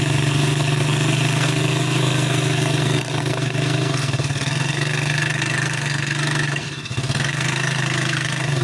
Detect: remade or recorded remade